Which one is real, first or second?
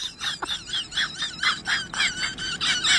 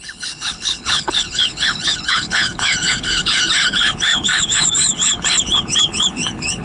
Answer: first